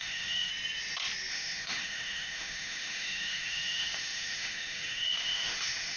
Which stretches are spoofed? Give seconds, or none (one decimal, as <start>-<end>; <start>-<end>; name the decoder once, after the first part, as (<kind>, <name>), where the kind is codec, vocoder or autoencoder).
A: 0.0-0.5 (autoencoder, DAC-VAE); 1.3-6.0